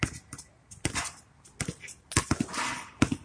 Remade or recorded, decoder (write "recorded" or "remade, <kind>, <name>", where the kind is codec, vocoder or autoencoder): recorded